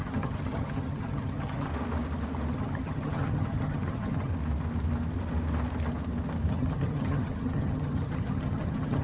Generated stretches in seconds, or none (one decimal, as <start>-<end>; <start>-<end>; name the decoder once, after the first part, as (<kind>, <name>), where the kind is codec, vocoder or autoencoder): 0.0-1.7 (vocoder, HiFi-GAN); 2.5-4.3; 6.5-9.0